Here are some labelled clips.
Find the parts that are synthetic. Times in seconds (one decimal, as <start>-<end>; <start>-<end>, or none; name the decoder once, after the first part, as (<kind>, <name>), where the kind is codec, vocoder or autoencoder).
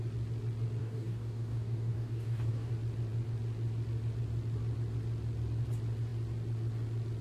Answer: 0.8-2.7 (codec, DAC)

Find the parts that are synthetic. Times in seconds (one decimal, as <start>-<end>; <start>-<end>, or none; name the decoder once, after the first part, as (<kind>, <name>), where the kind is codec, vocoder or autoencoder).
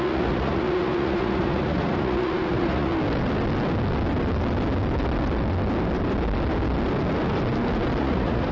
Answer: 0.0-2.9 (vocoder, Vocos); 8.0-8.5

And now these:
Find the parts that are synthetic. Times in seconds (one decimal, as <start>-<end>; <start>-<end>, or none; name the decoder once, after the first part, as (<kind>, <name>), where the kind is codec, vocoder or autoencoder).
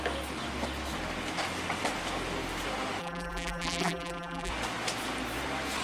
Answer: 3.0-4.5 (vocoder, BigVGAN v2)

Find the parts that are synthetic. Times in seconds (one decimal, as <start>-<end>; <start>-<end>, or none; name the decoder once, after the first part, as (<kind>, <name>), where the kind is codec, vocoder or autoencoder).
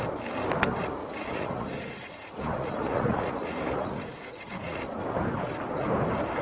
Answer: 1.0-4.8 (vocoder, Vocos)